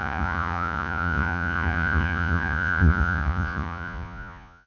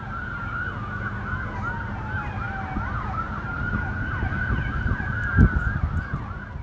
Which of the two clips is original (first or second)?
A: second